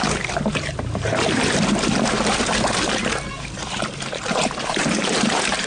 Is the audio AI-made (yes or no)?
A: yes